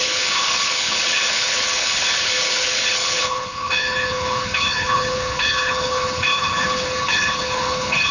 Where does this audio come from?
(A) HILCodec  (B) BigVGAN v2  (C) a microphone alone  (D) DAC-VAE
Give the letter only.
A